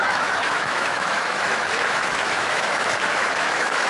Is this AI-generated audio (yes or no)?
yes